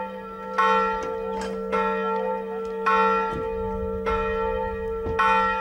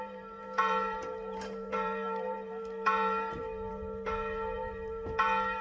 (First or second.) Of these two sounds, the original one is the first